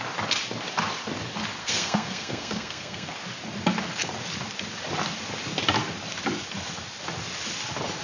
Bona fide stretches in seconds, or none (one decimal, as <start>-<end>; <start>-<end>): 0.0-1.6; 3.1-8.0